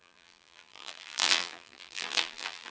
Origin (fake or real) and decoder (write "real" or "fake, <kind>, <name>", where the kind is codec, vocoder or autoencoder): fake, vocoder, BigVGAN v2